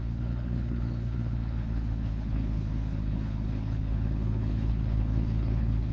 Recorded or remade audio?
remade